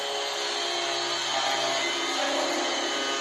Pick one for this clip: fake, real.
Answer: real